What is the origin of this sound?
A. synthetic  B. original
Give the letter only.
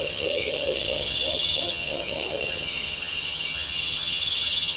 A